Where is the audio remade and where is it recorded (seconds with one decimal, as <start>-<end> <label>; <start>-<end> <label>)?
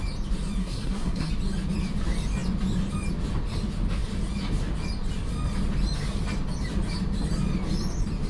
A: 0.0-0.6 recorded; 0.6-1.3 remade; 1.3-8.3 recorded